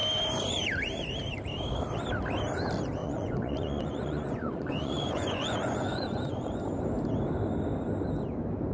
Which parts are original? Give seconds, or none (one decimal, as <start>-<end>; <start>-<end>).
0.0-3.0; 6.5-8.7